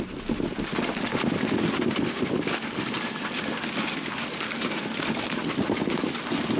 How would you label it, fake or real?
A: real